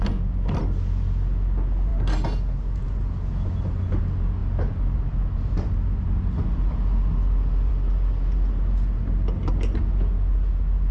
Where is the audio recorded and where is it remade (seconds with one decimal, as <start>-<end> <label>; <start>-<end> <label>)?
0.0-10.9 recorded